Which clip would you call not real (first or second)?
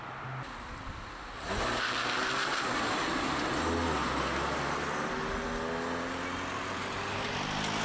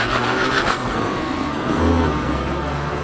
second